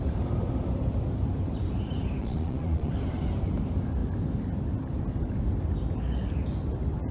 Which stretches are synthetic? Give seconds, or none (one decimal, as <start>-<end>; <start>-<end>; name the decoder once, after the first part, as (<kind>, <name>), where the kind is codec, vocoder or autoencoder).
2.2-2.9 (vocoder, Vocos)